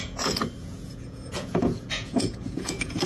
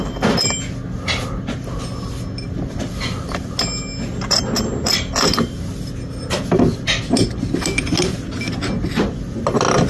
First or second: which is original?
second